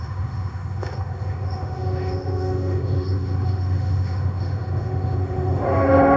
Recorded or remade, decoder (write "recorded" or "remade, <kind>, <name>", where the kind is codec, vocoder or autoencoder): remade, autoencoder, DAC-VAE